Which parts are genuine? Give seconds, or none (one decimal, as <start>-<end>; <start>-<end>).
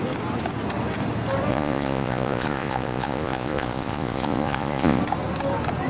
0.0-1.5; 5.0-5.9